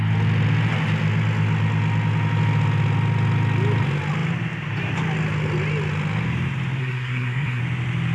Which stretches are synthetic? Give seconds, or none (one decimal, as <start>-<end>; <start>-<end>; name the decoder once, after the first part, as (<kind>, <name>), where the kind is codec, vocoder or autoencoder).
6.8-7.6 (codec, SNAC)

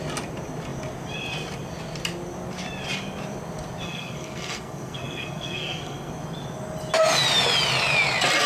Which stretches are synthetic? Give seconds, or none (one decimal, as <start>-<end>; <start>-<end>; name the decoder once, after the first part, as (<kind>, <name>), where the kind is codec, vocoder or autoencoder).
3.8-6.1 (codec, SNAC)

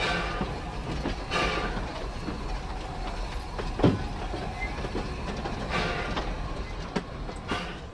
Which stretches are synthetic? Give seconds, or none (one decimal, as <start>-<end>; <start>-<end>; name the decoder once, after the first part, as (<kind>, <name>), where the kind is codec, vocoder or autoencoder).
1.9-2.5 (vocoder, Vocos)

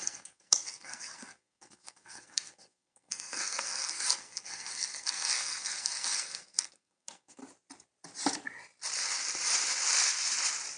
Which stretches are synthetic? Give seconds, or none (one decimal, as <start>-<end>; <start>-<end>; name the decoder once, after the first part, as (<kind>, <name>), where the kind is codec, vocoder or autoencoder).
0.0-7.4 (codec, SNAC)